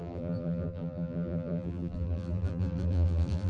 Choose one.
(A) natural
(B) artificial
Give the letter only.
B